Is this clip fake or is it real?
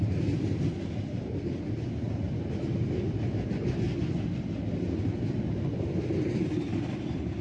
real